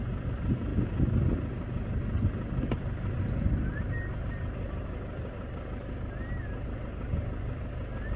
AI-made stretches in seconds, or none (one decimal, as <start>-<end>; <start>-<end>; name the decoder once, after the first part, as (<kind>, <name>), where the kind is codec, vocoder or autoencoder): none

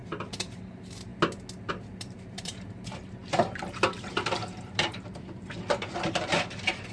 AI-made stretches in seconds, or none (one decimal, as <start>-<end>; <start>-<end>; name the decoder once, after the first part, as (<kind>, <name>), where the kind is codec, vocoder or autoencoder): 0.0-1.1 (vocoder, BigVGAN v2); 1.7-6.9

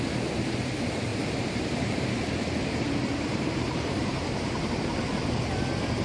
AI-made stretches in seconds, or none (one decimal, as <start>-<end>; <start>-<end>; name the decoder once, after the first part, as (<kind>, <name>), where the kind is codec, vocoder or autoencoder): 1.1-4.7 (vocoder, BigVGAN v2)